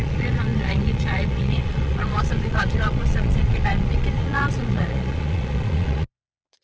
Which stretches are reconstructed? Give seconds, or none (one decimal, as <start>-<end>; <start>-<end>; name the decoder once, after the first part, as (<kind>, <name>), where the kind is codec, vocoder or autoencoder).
0.0-6.6 (vocoder, Vocos)